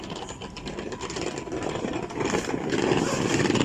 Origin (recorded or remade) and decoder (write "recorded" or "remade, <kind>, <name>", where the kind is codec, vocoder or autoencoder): recorded